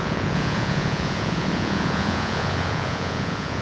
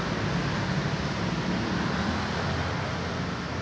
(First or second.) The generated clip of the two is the first